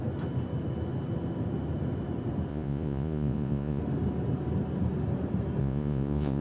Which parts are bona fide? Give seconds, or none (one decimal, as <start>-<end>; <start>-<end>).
0.0-2.5; 3.8-5.6